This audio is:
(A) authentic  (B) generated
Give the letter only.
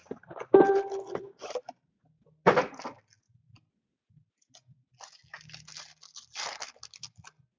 A